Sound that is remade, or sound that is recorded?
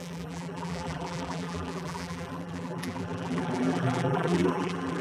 remade